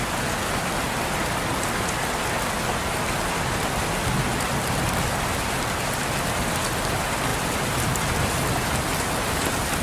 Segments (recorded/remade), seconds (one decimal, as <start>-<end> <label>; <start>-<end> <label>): 0.0-7.3 recorded; 7.3-8.8 remade; 8.8-9.8 recorded